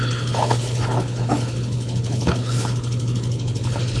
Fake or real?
fake